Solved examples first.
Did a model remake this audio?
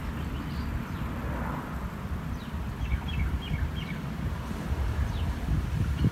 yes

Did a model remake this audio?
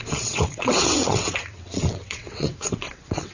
yes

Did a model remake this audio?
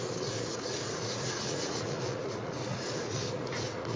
yes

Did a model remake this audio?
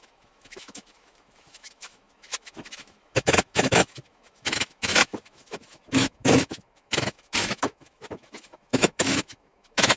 yes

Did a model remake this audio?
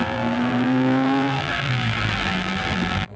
yes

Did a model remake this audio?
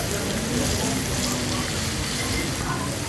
no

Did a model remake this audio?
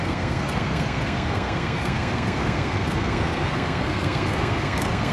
yes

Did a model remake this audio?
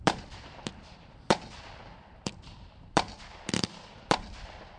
yes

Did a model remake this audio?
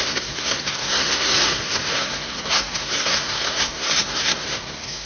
yes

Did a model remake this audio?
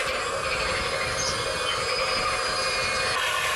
no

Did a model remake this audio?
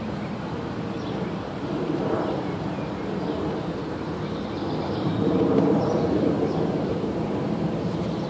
yes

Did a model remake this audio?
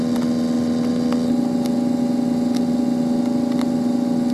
no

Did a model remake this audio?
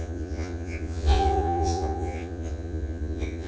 yes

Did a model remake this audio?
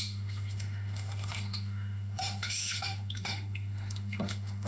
yes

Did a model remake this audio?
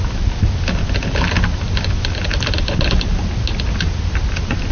no